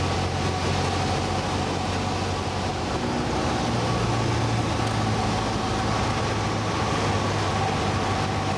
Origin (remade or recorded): recorded